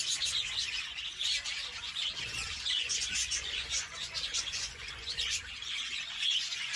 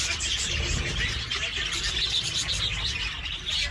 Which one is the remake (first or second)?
first